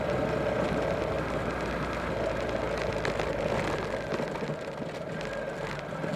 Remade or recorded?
recorded